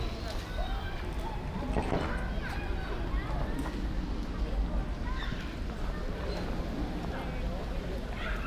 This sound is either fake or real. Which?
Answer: real